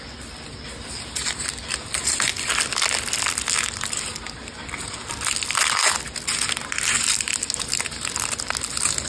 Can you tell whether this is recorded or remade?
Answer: recorded